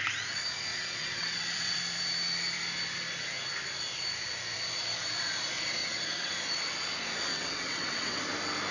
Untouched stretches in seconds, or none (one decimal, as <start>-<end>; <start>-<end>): 0.0-0.7; 1.8-5.8; 6.3-7.3; 8.2-8.7